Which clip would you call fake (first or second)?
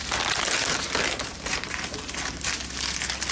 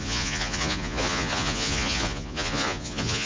second